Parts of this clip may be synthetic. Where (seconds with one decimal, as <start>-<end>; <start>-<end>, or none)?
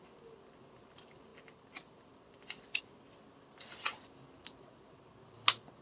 1.3-2.8